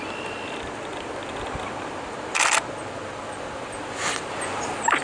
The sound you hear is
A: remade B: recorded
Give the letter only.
B